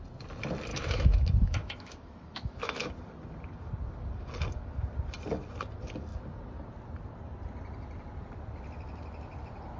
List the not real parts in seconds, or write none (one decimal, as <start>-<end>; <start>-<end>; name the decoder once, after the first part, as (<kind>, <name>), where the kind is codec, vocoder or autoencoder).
0.7-2.9 (autoencoder, DAC-VAE)